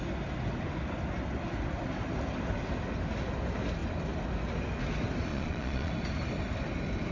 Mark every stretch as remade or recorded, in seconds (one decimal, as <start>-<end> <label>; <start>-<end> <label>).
0.0-5.3 recorded; 5.3-5.9 remade; 5.9-7.1 recorded